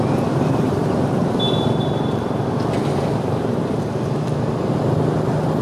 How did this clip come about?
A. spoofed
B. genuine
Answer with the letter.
B